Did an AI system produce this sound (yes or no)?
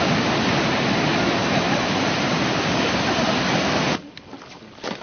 no